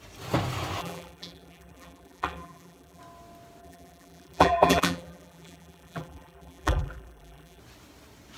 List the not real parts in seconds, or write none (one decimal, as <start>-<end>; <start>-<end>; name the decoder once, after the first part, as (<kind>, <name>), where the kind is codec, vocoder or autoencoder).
0.8-3.0 (vocoder, BigVGAN v2); 3.6-7.6